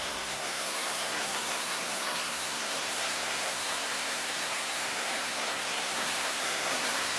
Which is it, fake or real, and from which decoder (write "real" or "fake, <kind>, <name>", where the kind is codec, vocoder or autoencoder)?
fake, codec, SNAC